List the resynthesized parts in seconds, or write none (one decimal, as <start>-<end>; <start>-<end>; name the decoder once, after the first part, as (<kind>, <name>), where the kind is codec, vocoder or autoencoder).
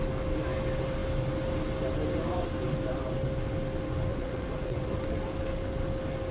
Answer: 4.1-5.0 (vocoder, WaveNeXt)